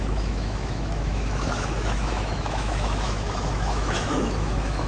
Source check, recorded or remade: remade